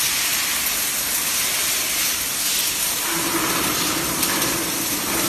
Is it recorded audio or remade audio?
recorded